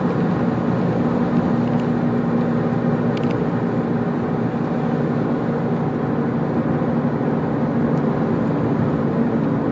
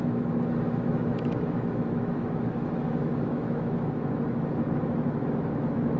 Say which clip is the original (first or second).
first